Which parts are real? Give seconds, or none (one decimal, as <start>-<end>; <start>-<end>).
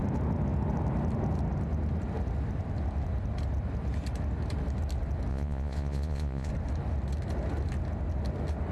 0.0-5.3; 6.5-8.7